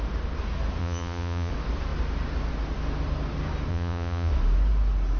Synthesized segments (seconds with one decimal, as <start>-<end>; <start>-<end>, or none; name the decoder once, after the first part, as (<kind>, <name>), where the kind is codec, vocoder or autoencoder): 0.8-1.5 (vocoder, Vocos); 3.7-4.3